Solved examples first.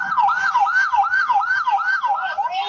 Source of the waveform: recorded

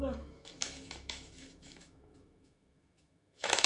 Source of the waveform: remade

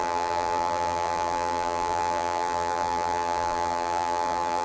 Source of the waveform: remade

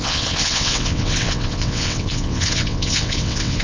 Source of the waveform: remade